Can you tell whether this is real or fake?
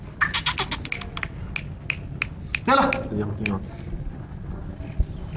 real